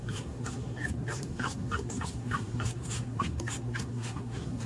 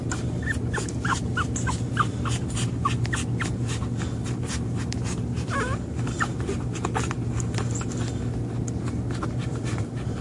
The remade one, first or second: first